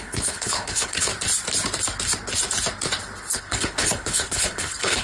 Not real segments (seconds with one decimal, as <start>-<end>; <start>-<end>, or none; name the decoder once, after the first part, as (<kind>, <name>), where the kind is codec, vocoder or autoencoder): 0.0-1.1 (codec, HILCodec); 3.3-5.0